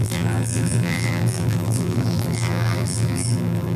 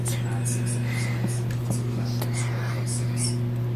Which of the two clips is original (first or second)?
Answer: second